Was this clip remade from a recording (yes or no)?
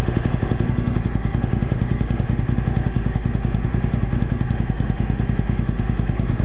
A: yes